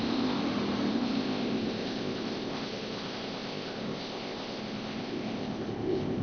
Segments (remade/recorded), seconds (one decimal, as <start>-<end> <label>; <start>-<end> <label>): 0.0-0.4 remade; 0.4-0.9 recorded; 0.9-6.2 remade